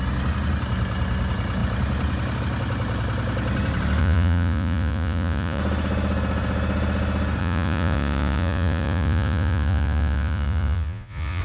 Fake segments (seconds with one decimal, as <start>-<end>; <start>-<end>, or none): 4.0-5.6; 7.4-11.4